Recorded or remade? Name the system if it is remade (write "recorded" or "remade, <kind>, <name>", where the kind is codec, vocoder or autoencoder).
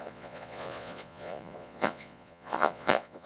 remade, vocoder, Vocos